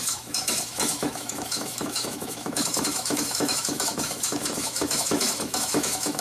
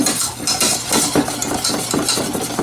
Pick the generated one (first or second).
first